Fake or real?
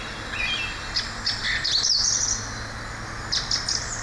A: real